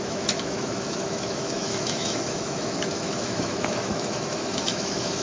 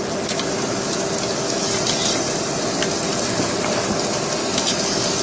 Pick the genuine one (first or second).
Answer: second